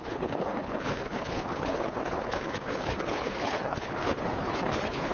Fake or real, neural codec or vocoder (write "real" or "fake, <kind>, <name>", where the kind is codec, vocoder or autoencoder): fake, codec, HILCodec